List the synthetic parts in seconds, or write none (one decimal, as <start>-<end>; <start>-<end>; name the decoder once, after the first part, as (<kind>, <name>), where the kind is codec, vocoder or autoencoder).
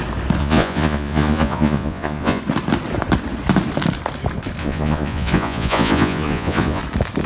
0.4-2.4 (vocoder, Vocos); 4.6-6.8